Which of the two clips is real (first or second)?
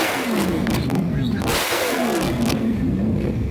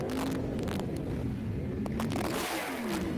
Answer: second